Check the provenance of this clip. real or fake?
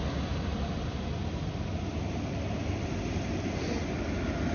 real